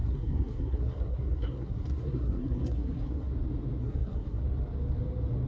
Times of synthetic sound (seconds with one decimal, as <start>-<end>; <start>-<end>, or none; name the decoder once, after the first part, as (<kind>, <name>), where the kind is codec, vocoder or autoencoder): 0.0-3.3 (codec, SNAC); 3.8-4.4